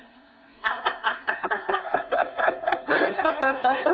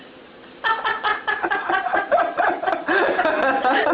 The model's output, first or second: first